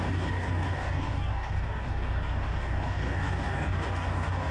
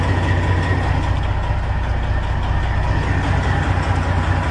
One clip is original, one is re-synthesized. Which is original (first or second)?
second